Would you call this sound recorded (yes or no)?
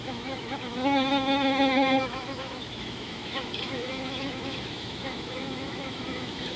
no